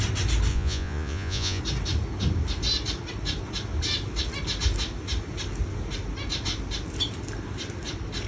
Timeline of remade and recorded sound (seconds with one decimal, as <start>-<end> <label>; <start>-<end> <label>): 0.0-0.5 recorded; 0.5-1.6 remade; 1.6-8.3 recorded